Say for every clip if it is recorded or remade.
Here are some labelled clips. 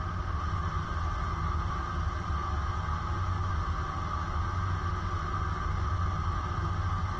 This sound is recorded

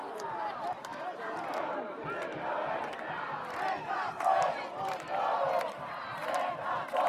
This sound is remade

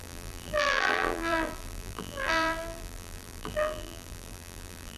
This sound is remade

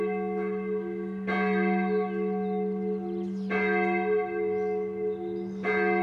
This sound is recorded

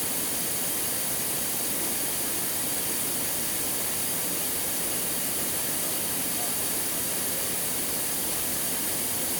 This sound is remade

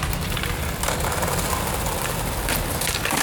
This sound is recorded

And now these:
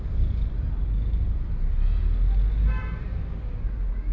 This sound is recorded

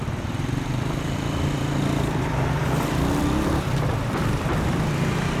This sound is remade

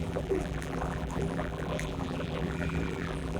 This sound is remade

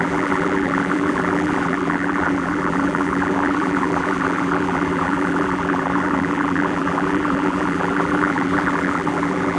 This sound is remade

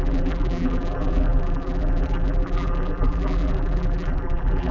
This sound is remade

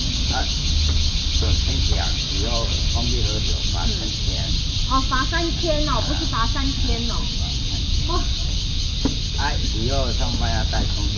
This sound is recorded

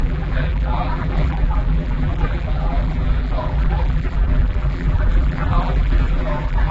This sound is remade